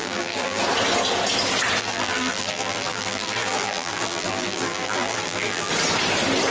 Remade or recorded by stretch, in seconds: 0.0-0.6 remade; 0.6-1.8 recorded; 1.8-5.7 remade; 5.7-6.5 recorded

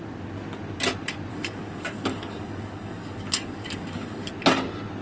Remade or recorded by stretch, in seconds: 0.0-1.3 recorded; 1.3-4.3 remade; 4.3-5.0 recorded